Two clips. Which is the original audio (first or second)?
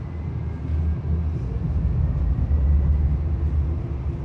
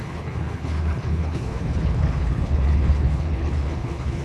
first